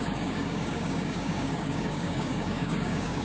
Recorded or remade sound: remade